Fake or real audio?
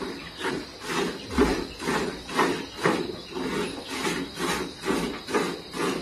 real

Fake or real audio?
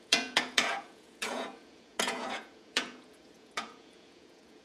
fake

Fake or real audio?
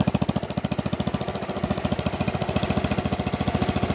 real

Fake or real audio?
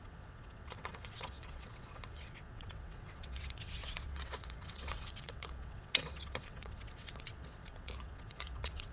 fake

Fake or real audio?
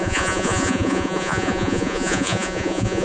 fake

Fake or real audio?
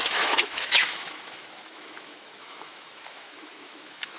fake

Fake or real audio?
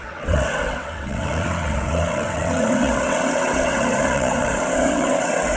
fake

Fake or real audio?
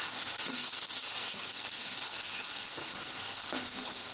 fake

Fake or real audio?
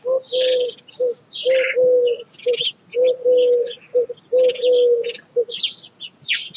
real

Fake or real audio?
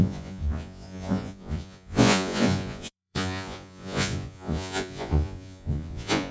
fake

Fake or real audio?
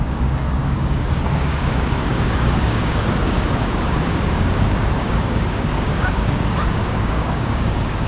fake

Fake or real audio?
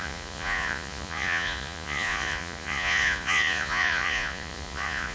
fake